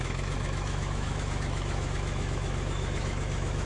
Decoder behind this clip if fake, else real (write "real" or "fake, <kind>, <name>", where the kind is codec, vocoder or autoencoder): fake, autoencoder, DAC-VAE